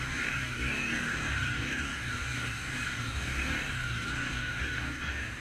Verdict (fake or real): fake